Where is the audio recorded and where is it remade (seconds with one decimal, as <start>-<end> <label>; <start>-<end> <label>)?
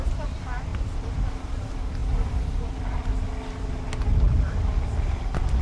0.0-2.0 recorded; 2.0-4.6 remade; 4.6-5.6 recorded